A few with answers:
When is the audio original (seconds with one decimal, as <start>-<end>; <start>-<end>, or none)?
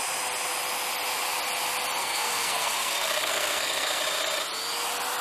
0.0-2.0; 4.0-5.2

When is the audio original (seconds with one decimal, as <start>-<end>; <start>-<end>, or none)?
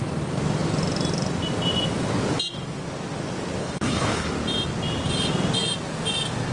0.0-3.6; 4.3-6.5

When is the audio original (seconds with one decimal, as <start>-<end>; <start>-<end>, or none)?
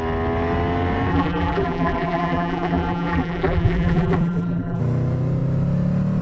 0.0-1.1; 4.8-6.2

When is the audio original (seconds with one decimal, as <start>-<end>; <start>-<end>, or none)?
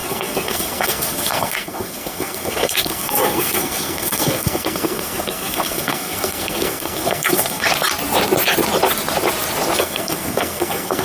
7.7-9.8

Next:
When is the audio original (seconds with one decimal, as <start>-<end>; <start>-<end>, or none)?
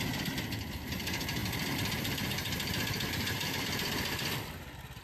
0.0-5.0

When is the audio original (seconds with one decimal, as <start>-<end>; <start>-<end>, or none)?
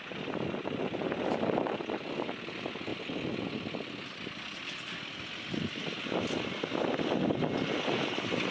0.0-8.5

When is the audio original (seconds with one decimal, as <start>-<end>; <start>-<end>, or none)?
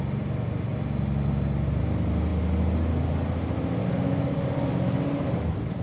0.0-3.8; 4.7-5.8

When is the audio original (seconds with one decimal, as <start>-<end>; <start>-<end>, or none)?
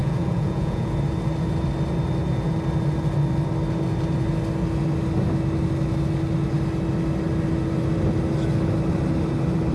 0.9-9.7